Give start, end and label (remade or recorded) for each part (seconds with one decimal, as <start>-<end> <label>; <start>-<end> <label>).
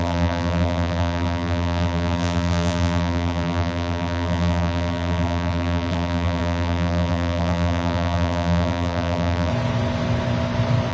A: 0.0-9.5 remade; 9.5-10.9 recorded